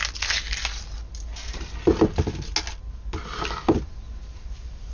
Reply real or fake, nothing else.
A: real